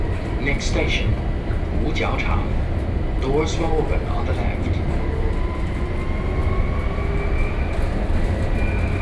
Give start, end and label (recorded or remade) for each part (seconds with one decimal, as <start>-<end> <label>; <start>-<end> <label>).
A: 0.0-9.0 recorded